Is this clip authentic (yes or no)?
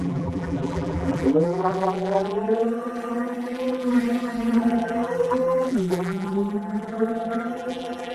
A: no